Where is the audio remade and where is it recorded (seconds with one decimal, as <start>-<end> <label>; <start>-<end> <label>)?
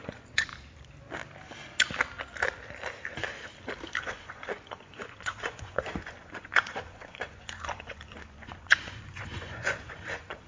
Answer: 0.0-0.5 remade; 0.5-4.0 recorded; 4.0-10.5 remade